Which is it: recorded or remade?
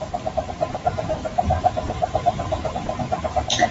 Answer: recorded